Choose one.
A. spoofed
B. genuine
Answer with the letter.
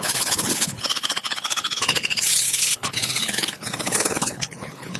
A